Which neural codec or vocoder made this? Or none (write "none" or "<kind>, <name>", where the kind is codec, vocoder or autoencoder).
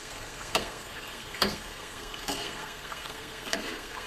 codec, SNAC